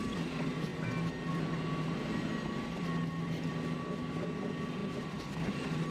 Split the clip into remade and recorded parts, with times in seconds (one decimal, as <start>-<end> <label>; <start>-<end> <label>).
0.0-5.9 recorded